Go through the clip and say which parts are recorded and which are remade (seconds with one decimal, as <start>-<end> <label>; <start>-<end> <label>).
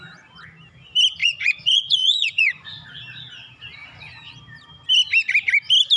0.0-1.2 recorded; 1.2-3.0 remade; 3.0-6.0 recorded